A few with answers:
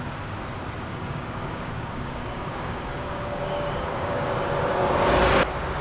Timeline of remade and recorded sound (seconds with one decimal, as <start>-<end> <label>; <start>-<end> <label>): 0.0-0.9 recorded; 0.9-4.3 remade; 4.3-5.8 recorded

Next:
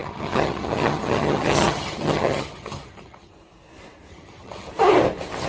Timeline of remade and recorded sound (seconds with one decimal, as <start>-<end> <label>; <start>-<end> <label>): 0.0-3.3 remade; 3.3-4.1 recorded; 4.1-4.7 remade; 4.7-5.5 recorded

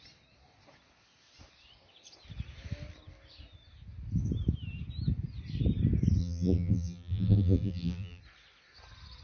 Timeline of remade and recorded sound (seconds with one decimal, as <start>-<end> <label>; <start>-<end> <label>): 0.0-6.2 recorded; 6.2-8.2 remade; 8.2-9.2 recorded

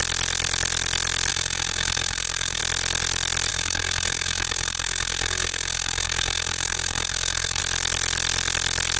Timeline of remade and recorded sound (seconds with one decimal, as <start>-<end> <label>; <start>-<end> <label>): 0.0-1.3 recorded; 1.3-2.6 remade; 2.6-3.5 recorded; 3.5-7.6 remade; 7.6-9.0 recorded